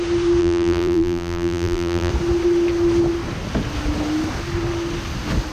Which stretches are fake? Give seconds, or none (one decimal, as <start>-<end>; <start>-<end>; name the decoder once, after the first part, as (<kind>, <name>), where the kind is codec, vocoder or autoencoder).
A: 0.4-2.1 (vocoder, BigVGAN v2)